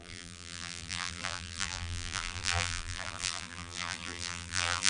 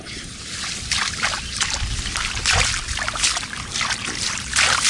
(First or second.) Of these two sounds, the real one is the second